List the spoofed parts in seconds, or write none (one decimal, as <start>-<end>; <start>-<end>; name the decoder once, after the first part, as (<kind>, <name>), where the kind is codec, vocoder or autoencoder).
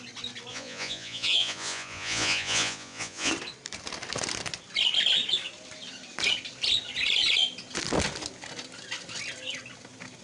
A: 0.5-3.3 (vocoder, Vocos)